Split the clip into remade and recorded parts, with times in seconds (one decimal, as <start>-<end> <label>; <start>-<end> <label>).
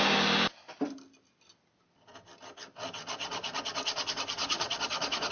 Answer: 0.0-3.1 recorded; 3.1-3.7 remade; 3.7-4.4 recorded; 4.4-5.3 remade